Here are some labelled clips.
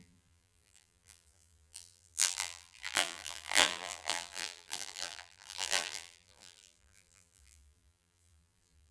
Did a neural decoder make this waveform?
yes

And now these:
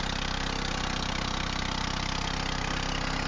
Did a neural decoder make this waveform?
no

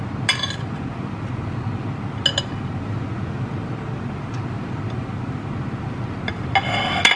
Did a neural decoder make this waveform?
no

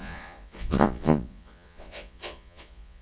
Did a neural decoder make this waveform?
yes